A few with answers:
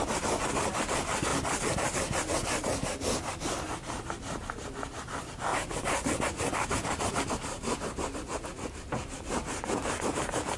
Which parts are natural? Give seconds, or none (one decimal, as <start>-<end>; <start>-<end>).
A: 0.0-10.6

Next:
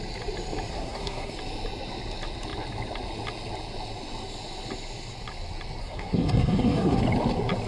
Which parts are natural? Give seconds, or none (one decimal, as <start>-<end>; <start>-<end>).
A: 0.0-0.7; 1.3-5.8; 7.0-7.7

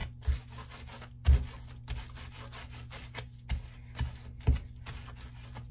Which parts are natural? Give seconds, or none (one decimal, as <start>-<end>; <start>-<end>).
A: 0.0-5.7

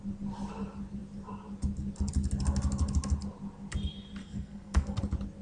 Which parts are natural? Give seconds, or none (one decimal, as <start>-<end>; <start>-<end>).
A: 0.0-4.2; 5.0-5.4

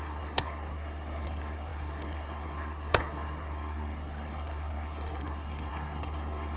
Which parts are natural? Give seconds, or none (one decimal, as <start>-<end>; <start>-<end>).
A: none

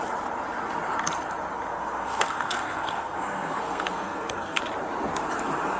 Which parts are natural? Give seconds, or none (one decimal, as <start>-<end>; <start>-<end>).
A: 0.0-1.7; 4.6-5.8

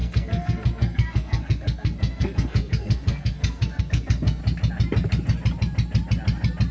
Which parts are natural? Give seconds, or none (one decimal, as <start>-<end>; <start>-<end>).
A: 4.4-6.7

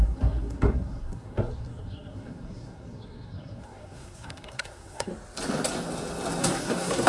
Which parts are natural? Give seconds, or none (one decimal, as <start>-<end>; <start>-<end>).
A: 5.1-6.4